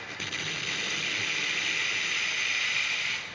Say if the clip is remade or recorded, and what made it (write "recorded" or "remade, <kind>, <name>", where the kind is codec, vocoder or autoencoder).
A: recorded